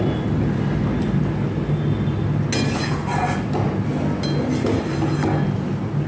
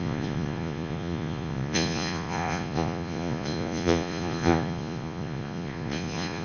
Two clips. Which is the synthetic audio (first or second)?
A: second